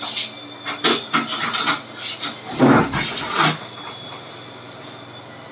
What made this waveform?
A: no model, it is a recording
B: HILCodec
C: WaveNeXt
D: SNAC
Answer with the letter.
A